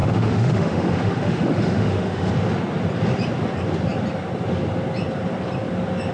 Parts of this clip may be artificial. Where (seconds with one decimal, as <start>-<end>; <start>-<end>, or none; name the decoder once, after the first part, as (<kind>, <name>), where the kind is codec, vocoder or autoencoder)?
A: 0.0-2.3 (autoencoder, DAC-VAE)